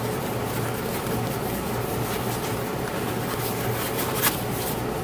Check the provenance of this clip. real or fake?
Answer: real